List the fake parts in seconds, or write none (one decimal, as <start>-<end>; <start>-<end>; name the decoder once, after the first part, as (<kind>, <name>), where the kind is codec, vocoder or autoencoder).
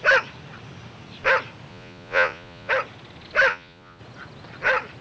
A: 1.7-2.7 (vocoder, Vocos); 3.5-4.0